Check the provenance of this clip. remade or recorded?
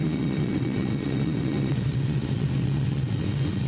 remade